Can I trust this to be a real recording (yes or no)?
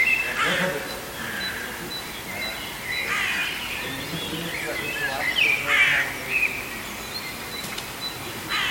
yes